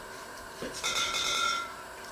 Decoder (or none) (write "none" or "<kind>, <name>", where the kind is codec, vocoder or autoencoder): vocoder, BigVGAN v2